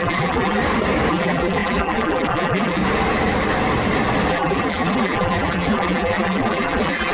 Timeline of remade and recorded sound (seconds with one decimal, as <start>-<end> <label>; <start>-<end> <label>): 0.0-0.6 remade; 0.6-1.1 recorded; 1.1-2.8 remade; 2.8-4.3 recorded; 4.3-7.1 remade